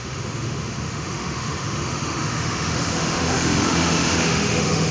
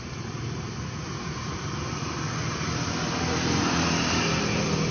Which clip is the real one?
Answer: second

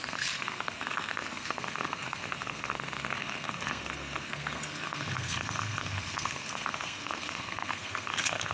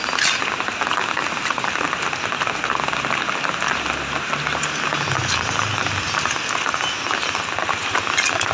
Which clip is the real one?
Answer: second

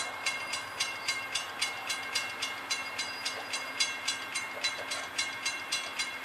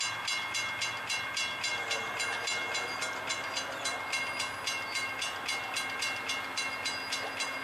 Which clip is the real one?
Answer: second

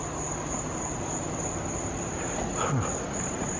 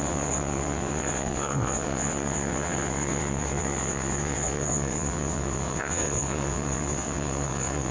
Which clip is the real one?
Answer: first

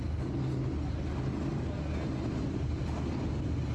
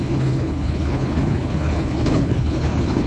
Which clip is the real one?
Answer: first